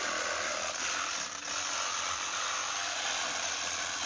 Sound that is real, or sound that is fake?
real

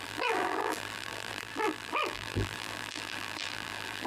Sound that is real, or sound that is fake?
fake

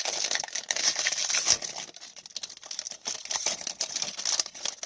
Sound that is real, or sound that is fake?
real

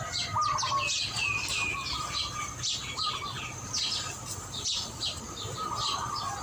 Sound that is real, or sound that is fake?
real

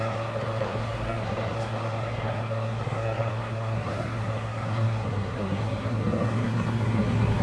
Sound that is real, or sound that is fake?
fake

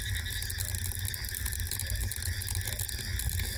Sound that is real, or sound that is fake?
real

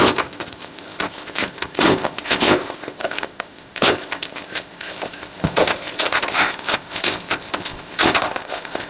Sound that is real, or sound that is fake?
fake